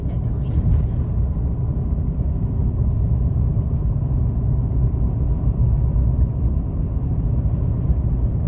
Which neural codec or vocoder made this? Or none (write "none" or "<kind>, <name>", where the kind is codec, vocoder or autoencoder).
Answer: none